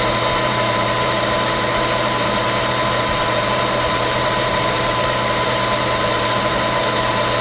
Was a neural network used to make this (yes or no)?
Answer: yes